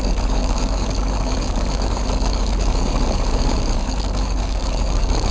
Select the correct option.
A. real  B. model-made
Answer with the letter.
B